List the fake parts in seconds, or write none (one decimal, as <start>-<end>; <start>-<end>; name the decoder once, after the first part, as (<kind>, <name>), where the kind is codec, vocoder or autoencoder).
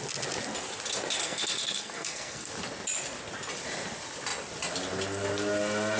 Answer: 1.2-2.5 (codec, SNAC)